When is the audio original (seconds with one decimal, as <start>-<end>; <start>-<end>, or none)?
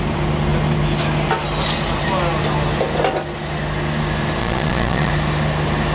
0.0-4.4; 5.1-5.9